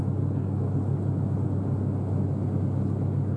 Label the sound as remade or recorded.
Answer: recorded